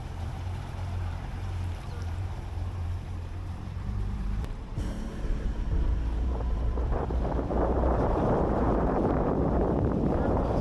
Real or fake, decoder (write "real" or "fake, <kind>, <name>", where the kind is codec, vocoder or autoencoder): fake, vocoder, BigVGAN v2